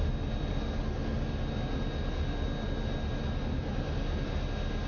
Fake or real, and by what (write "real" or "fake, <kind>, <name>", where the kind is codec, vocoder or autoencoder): real